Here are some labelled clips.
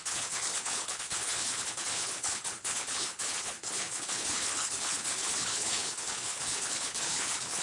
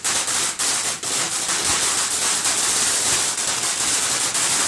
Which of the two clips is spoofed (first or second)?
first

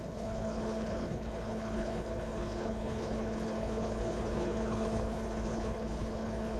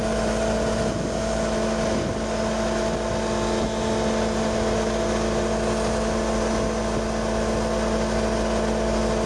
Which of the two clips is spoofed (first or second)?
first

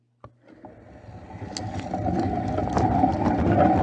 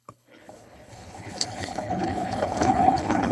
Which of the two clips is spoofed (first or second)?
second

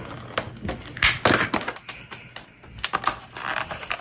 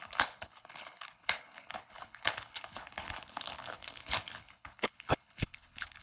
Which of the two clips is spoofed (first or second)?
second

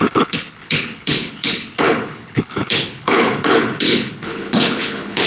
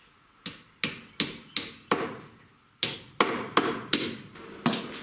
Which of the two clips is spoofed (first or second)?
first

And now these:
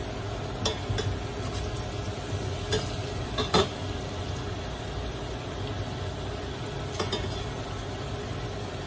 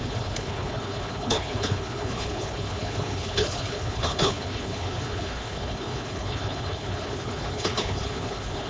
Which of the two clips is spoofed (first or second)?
second